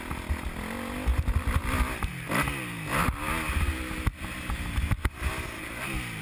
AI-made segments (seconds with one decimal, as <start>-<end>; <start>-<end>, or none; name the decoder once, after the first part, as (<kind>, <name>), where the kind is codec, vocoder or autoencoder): 1.1-2.1 (vocoder, BigVGAN v2)